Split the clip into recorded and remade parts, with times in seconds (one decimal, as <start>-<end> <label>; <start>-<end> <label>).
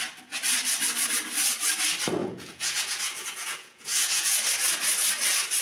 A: 0.0-2.2 recorded; 2.2-4.4 remade; 4.4-5.6 recorded